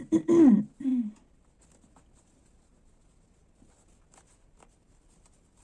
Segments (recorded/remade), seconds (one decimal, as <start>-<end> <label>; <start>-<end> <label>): 0.0-5.6 recorded

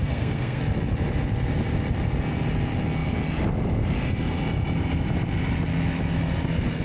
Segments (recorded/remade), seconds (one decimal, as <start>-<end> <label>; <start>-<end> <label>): 0.0-0.6 remade; 0.6-6.8 recorded

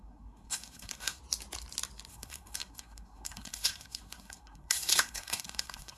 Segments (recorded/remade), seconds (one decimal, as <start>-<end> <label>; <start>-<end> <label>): 0.0-1.2 remade; 1.2-2.1 recorded; 2.1-6.0 remade

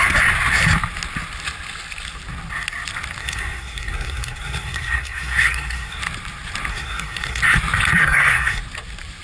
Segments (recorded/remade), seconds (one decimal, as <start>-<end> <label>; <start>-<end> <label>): 0.0-3.2 recorded; 3.2-6.0 remade; 6.0-6.7 recorded; 6.7-7.4 remade; 7.4-8.0 recorded; 8.0-8.6 remade; 8.6-9.2 recorded

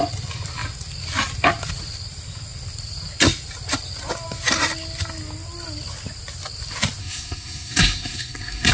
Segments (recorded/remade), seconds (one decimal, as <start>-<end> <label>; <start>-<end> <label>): 0.0-7.0 recorded; 7.0-8.7 remade